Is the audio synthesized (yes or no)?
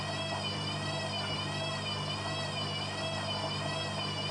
no